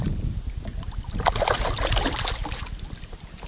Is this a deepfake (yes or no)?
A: no